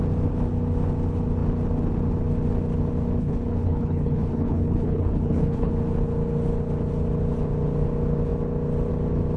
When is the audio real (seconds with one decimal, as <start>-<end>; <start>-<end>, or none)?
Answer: 0.0-3.2; 5.7-9.4